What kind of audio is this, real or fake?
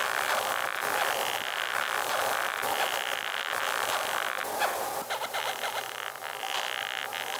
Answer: real